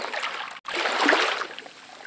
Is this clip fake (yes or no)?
no